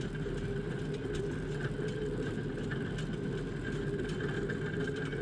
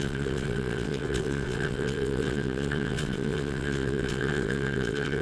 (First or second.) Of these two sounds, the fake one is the second